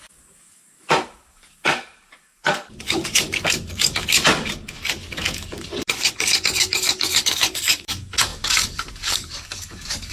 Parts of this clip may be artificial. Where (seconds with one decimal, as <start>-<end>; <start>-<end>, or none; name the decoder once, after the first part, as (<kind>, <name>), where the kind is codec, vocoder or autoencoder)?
0.0-10.1 (codec, DAC)